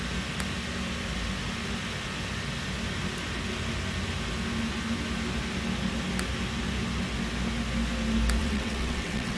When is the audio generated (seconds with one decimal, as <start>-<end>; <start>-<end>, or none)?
8.4-9.4